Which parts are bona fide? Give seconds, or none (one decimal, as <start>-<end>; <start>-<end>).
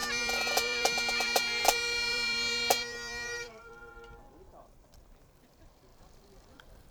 3.9-4.5; 5.4-5.9